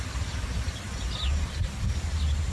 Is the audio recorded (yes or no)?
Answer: yes